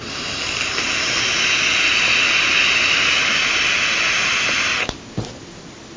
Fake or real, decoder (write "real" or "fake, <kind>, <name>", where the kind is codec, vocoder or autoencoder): real